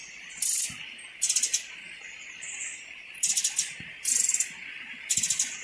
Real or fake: real